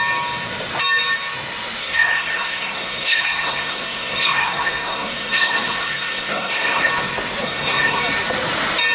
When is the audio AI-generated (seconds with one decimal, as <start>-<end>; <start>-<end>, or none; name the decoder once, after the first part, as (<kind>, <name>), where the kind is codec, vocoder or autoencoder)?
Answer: 1.8-6.9 (codec, SNAC); 7.4-8.0